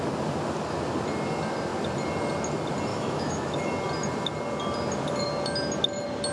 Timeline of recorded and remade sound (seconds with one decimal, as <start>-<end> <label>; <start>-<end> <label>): 0.0-2.9 recorded; 2.9-3.7 remade; 3.7-6.3 recorded